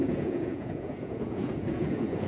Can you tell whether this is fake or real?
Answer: fake